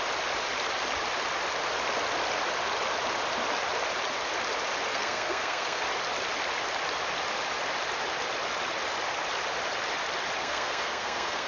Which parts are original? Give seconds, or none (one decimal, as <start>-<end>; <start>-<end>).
0.0-4.9; 5.8-10.4

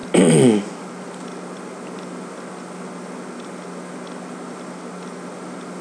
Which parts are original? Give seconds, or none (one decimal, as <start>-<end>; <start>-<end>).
0.0-5.8

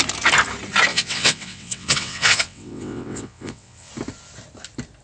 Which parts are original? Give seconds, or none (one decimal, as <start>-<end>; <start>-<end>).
0.0-0.9; 3.9-5.0